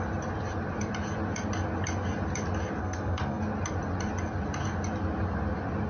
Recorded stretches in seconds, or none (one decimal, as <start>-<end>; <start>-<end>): 0.0-2.8; 3.4-5.9